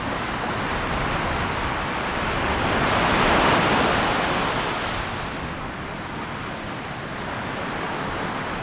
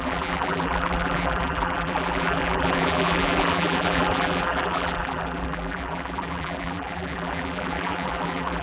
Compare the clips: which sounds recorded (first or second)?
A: first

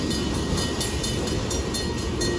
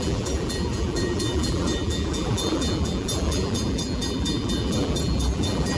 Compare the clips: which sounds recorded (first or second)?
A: first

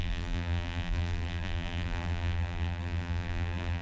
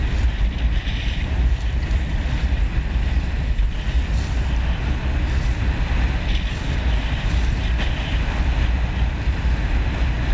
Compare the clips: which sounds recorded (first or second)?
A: second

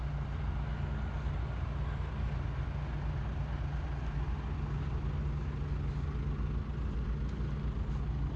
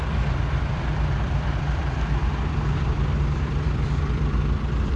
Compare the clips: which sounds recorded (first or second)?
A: first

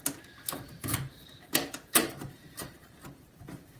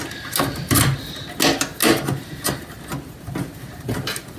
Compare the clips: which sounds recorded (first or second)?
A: second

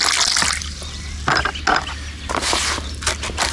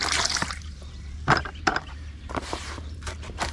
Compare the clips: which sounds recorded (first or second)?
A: first